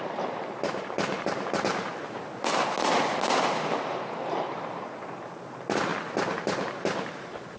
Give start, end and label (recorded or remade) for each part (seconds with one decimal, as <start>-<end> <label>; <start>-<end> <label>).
0.0-1.9 remade; 1.9-4.5 recorded; 4.5-5.9 remade; 5.9-6.4 recorded; 6.4-7.6 remade

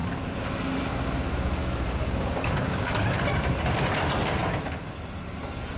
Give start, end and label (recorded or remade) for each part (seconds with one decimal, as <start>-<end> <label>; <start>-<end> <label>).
0.0-1.6 recorded; 1.6-2.9 remade; 2.9-5.8 recorded

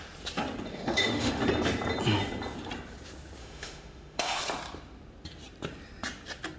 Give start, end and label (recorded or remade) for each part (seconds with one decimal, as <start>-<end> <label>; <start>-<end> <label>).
0.0-0.7 recorded; 0.7-1.4 remade; 1.4-3.4 recorded; 3.4-4.4 remade; 4.4-6.6 recorded

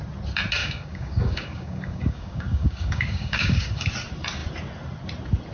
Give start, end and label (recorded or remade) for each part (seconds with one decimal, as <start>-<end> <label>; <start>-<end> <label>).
0.0-0.6 recorded; 0.6-3.9 remade; 3.9-5.5 recorded

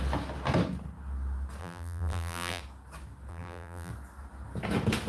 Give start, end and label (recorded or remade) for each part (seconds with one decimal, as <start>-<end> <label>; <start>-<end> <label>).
0.0-1.6 recorded; 1.6-2.6 remade; 2.6-3.3 recorded; 3.3-3.9 remade; 3.9-5.1 recorded

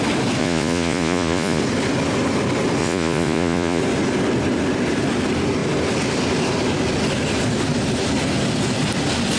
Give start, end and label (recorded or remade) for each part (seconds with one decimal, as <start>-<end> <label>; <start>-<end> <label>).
0.0-0.4 recorded; 0.4-1.6 remade; 1.6-2.8 recorded; 2.8-3.8 remade; 3.8-9.4 recorded

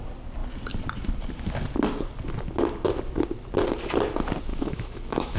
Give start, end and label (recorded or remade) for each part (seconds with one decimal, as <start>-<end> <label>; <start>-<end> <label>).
0.0-4.5 recorded; 4.5-5.4 remade